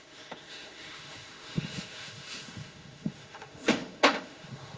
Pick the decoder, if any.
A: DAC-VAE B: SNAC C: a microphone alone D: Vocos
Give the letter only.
A